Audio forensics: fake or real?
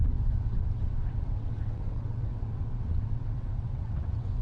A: fake